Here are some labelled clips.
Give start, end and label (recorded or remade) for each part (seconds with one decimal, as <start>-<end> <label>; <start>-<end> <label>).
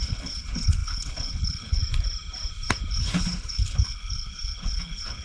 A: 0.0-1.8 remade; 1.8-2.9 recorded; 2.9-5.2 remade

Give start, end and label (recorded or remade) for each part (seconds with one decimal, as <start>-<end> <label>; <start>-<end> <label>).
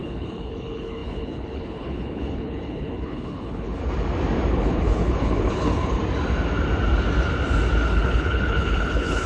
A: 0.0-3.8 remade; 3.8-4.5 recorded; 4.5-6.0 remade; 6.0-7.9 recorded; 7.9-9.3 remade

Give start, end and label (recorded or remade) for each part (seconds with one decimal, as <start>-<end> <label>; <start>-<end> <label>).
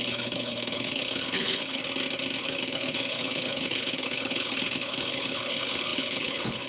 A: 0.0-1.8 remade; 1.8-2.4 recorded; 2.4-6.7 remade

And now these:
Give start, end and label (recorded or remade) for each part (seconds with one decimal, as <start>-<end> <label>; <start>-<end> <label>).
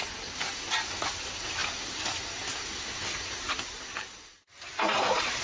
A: 0.0-5.4 recorded